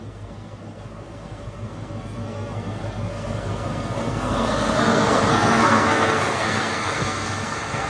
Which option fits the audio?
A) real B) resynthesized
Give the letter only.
B